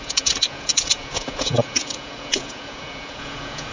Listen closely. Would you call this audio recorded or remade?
remade